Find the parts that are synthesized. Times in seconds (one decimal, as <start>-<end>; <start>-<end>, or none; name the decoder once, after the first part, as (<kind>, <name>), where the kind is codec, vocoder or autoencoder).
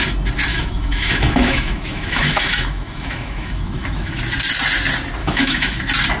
0.5-4.2 (autoencoder, DAC-VAE); 5.2-5.7